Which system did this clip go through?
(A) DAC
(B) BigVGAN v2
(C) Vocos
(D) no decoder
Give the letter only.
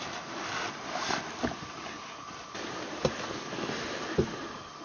D